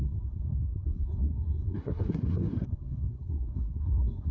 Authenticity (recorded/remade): remade